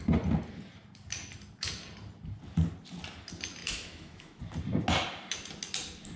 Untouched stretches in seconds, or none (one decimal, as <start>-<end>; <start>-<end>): 0.0-3.6; 4.4-6.2